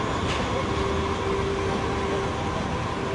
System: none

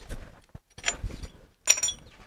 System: none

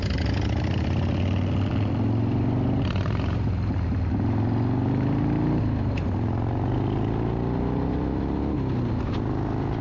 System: none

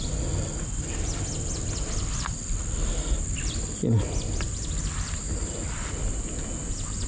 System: none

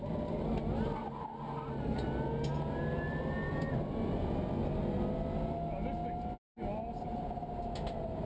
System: none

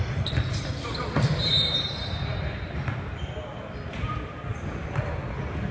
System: none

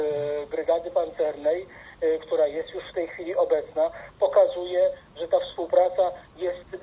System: none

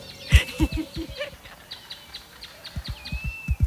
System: none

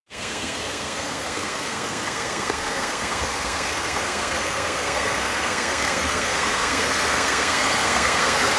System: codec, SNAC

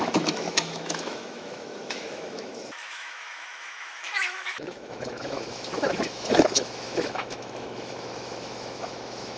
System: autoencoder, DAC-VAE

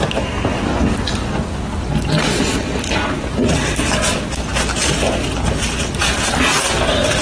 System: none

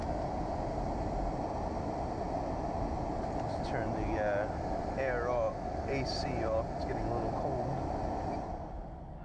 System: none